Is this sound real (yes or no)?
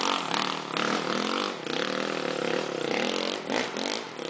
yes